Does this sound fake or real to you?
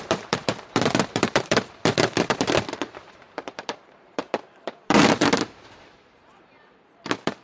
fake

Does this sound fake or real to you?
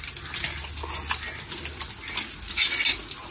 real